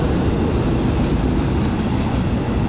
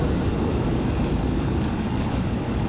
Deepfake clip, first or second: second